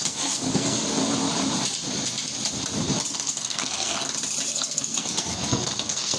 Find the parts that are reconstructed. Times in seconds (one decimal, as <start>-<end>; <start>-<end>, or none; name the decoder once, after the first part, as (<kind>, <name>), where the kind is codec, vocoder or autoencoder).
0.0-1.0 (codec, SNAC); 3.1-4.0; 4.5-6.2